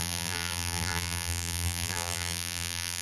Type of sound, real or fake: fake